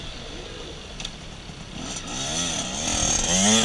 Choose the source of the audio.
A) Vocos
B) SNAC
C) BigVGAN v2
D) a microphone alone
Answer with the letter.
D